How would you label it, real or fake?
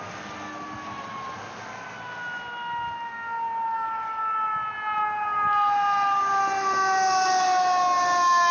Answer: real